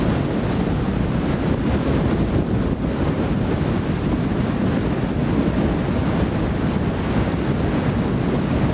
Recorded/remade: recorded